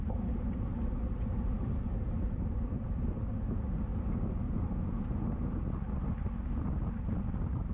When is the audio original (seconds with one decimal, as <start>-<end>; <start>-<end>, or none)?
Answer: 3.9-7.3